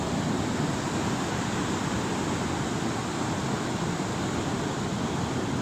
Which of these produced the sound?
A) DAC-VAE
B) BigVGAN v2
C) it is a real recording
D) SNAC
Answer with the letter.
C